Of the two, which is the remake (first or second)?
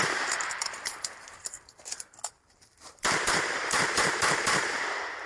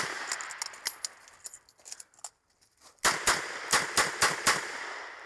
first